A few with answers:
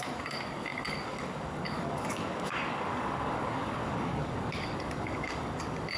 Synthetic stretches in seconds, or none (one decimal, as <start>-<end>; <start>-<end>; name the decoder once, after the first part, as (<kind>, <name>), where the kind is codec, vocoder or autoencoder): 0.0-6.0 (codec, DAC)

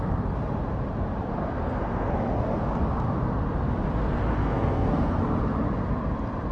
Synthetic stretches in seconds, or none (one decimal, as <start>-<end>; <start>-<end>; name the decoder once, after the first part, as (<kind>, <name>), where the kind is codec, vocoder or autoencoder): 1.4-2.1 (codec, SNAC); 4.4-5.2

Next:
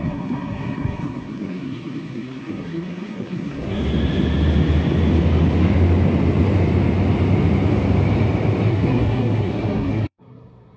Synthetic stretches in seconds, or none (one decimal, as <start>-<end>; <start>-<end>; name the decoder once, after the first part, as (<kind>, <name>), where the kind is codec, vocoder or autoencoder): 0.0-3.8 (codec, SNAC); 8.7-10.8

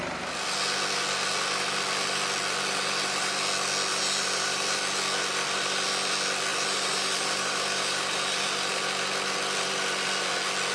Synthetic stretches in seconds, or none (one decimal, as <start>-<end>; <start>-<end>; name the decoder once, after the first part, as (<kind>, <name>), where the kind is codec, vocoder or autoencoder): 3.9-4.8 (vocoder, BigVGAN v2); 6.5-8.7